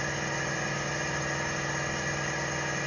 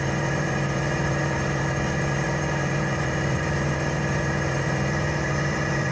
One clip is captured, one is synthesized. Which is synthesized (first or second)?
second